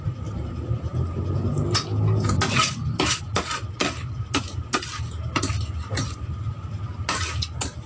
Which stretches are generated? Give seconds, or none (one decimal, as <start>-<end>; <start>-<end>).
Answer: none